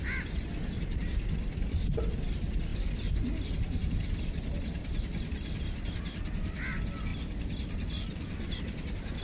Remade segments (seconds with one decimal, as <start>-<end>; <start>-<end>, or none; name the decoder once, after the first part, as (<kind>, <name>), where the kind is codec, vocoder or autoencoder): none